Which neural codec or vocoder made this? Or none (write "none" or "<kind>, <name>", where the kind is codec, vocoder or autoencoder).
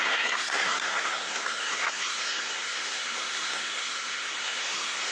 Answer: codec, SNAC